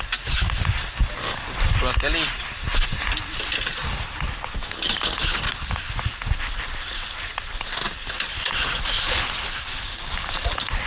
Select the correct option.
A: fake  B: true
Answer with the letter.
B